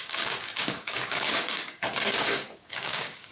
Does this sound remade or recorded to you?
remade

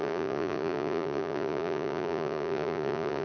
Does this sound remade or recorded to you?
remade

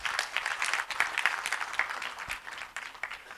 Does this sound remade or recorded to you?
remade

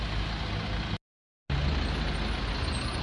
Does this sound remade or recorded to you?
recorded